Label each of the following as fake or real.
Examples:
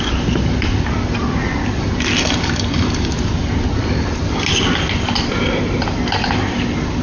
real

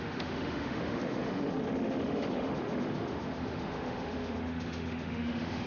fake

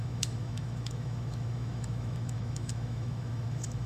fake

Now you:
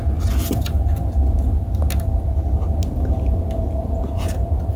real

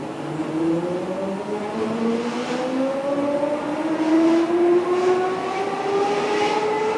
real